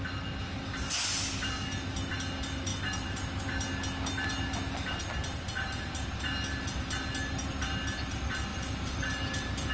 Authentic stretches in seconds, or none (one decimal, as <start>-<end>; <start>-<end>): 0.0-2.7; 3.4-5.3; 5.9-8.5

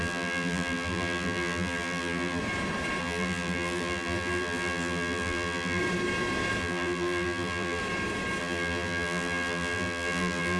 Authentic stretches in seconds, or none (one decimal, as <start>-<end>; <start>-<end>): 2.4-3.0; 5.8-6.6; 7.8-8.4